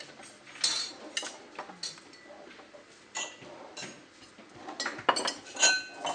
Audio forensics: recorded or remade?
recorded